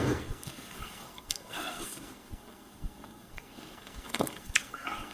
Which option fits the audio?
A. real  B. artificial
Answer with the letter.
B